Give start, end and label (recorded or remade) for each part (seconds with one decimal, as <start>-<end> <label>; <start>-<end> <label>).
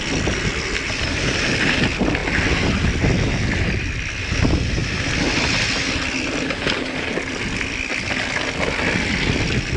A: 0.0-9.8 recorded